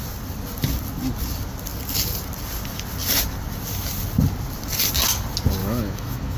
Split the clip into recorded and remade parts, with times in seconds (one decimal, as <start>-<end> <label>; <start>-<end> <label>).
0.0-5.6 recorded; 5.6-6.4 remade